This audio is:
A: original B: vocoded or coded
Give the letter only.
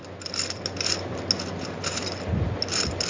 A